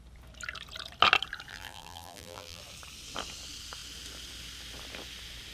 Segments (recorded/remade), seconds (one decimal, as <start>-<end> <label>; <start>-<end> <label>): 0.0-1.5 recorded; 1.5-2.6 remade; 2.6-5.5 recorded